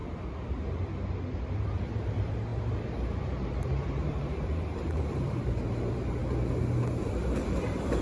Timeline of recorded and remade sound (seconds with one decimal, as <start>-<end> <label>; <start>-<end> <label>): 0.0-1.4 recorded; 1.4-6.2 remade; 6.2-7.1 recorded; 7.1-8.0 remade

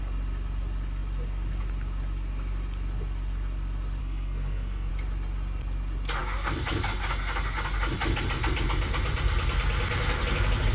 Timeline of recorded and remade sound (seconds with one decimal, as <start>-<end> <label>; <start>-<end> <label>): 0.0-4.0 recorded; 4.0-4.9 remade; 4.9-10.7 recorded

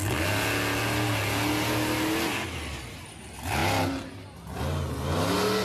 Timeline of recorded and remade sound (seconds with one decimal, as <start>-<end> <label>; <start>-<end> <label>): 0.0-5.6 recorded

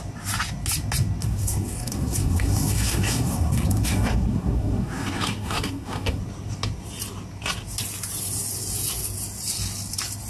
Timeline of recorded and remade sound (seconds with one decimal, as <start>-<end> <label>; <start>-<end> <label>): 0.0-1.2 recorded; 1.2-6.2 remade; 6.2-10.3 recorded

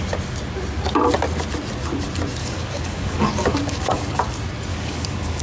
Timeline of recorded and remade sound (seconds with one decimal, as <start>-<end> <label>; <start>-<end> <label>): 0.0-2.4 recorded; 2.4-4.2 remade; 4.2-4.7 recorded; 4.7-5.4 remade

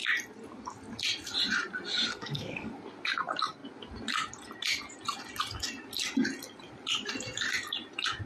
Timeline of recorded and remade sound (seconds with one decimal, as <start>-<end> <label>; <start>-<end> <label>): 0.0-2.1 recorded; 2.1-2.7 remade; 2.7-8.3 recorded

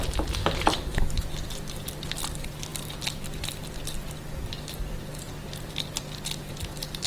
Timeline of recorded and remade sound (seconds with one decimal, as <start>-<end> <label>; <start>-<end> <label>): 0.0-7.1 recorded

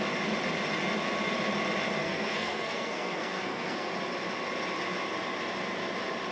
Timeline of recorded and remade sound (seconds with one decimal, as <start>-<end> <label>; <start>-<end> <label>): 0.0-2.0 recorded; 2.0-3.9 remade; 3.9-6.3 recorded